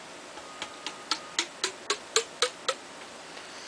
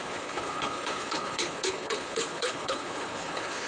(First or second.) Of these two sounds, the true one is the first